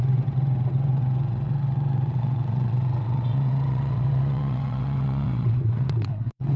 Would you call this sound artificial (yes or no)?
yes